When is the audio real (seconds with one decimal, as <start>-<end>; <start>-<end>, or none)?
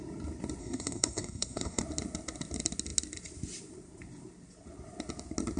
0.0-0.6; 1.8-5.6